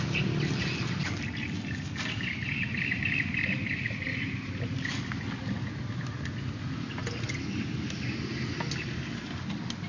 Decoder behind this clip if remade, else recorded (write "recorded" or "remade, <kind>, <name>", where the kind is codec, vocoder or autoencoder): recorded